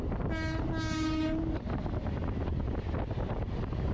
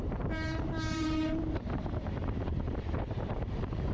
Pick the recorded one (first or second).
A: first